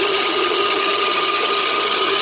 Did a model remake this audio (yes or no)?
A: yes